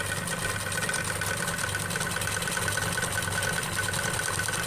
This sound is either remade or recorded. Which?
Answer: recorded